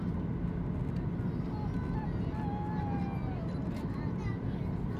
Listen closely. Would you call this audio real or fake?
real